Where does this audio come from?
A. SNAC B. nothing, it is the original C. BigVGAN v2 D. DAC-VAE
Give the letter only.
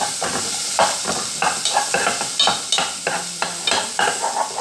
B